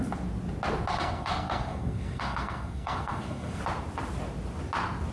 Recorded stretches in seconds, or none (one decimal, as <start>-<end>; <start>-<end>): 0.0-0.9; 3.6-5.1